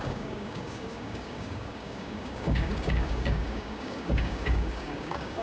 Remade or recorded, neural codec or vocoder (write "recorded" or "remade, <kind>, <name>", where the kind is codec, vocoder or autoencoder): remade, codec, DAC